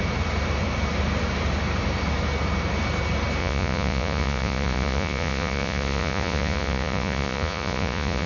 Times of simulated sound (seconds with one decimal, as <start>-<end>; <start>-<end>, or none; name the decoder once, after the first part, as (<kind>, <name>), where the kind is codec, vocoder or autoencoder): 3.4-8.3 (vocoder, Vocos)